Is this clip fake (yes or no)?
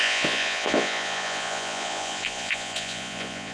yes